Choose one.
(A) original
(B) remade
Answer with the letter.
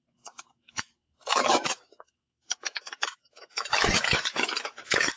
B